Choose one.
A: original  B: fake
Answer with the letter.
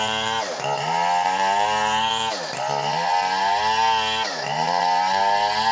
A